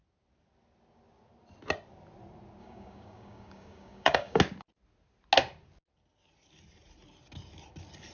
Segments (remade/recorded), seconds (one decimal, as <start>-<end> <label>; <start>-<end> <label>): 0.0-2.6 recorded; 2.6-4.4 remade; 4.4-8.1 recorded